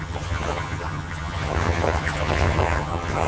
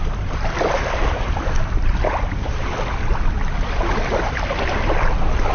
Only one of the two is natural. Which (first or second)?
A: second